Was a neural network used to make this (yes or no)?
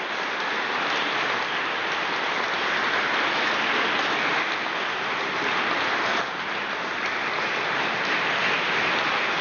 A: no